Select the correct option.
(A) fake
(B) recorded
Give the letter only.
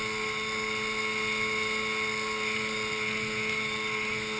B